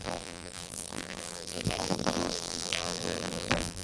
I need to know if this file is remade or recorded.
remade